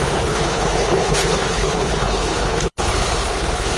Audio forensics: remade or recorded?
remade